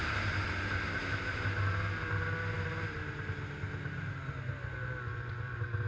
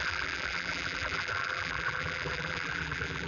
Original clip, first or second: first